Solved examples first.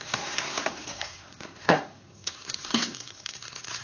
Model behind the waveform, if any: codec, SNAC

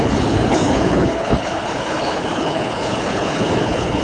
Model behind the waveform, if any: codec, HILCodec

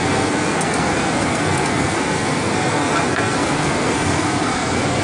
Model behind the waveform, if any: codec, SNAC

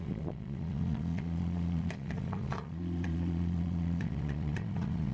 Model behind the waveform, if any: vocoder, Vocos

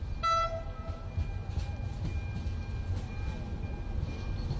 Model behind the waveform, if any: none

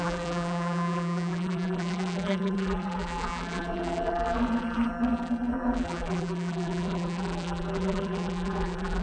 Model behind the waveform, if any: vocoder, BigVGAN v2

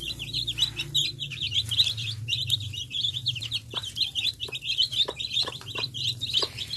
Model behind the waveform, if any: vocoder, BigVGAN v2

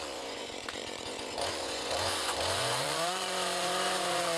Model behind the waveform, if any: vocoder, Vocos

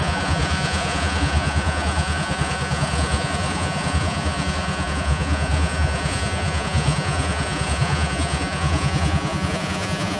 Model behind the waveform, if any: vocoder, Vocos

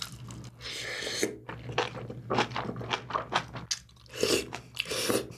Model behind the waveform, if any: none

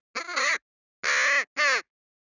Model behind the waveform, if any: none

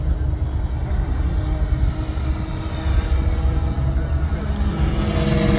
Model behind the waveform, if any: none